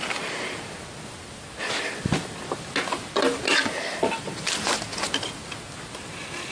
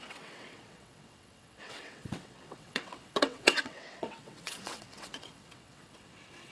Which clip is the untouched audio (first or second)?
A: first